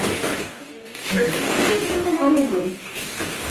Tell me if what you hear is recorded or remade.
remade